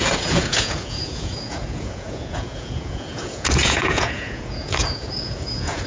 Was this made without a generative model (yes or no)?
no